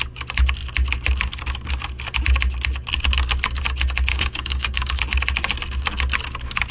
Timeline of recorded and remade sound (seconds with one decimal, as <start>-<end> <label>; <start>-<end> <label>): 0.0-4.1 recorded; 4.1-5.0 remade; 5.0-6.7 recorded